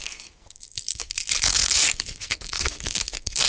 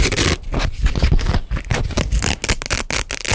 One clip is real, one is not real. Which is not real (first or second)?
first